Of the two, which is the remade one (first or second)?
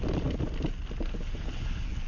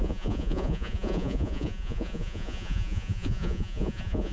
second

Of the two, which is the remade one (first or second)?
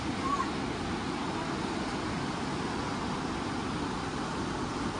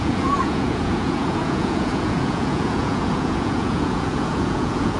second